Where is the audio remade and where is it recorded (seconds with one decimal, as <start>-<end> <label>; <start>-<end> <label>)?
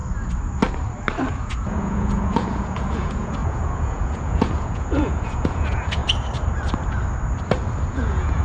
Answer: 0.0-1.3 recorded; 1.3-6.0 remade; 6.0-7.9 recorded; 7.9-8.4 remade